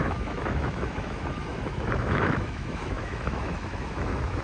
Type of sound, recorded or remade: remade